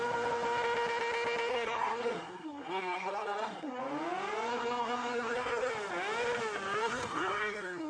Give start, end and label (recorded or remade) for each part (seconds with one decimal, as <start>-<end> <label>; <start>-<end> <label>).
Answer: 0.0-1.5 recorded; 1.5-3.8 remade; 3.8-4.5 recorded; 4.5-5.7 remade; 5.7-6.8 recorded; 6.8-7.9 remade